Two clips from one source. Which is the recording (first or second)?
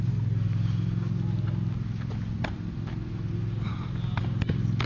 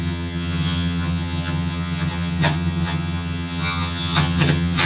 first